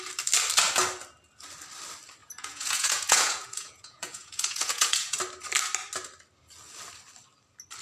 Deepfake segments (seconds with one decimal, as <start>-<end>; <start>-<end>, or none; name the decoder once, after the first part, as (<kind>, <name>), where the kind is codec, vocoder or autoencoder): 2.2-5.2 (vocoder, Vocos)